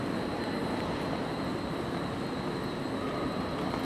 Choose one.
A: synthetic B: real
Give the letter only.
B